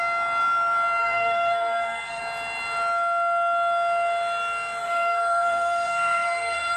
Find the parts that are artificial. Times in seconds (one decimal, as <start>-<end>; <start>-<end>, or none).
1.0-2.2; 4.8-6.8